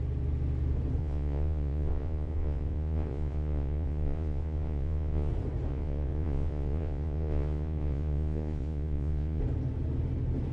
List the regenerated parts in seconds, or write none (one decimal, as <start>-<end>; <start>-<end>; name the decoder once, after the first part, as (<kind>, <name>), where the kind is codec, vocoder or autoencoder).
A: 1.0-5.3 (vocoder, Vocos); 5.7-9.4